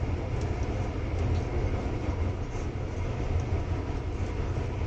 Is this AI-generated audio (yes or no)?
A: no